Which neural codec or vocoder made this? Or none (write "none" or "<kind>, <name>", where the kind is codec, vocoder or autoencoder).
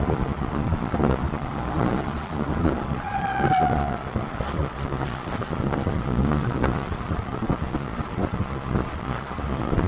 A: vocoder, Vocos